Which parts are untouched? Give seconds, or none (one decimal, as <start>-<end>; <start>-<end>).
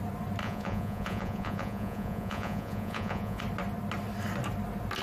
0.0-0.4; 3.4-5.0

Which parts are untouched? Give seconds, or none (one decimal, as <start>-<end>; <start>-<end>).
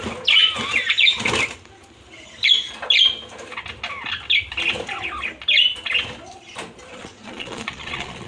0.0-6.9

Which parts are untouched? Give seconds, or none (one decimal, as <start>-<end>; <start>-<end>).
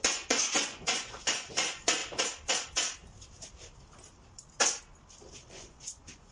2.0-5.5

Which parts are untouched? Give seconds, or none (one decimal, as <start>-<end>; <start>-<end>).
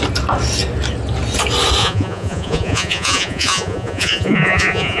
0.0-1.8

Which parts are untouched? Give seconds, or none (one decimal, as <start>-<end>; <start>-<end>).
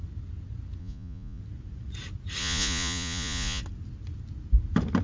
0.0-0.8; 1.4-2.4; 3.6-5.0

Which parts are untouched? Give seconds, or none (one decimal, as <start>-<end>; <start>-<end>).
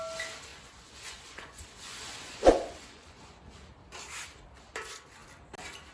0.0-0.5; 3.5-5.9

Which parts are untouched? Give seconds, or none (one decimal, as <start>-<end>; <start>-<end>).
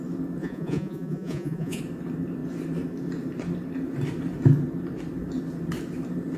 0.0-0.4; 1.8-6.4